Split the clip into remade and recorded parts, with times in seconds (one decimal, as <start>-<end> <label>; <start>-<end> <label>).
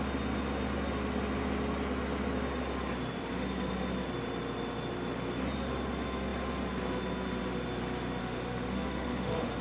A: 0.0-8.2 recorded; 8.2-9.6 remade